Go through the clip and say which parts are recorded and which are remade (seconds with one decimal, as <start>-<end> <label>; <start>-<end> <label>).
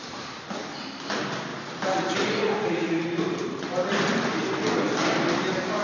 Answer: 0.0-1.5 recorded; 1.5-3.0 remade; 3.0-5.8 recorded